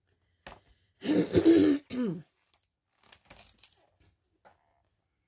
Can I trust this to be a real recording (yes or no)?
yes